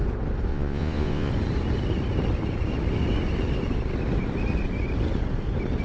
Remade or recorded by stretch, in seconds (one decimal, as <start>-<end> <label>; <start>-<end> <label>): 0.0-0.5 recorded; 0.5-1.3 remade; 1.3-5.8 recorded